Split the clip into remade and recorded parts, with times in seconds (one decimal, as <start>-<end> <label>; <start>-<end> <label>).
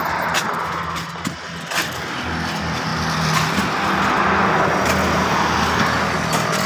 0.0-6.7 recorded